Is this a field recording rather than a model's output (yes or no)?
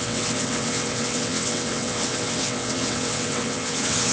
no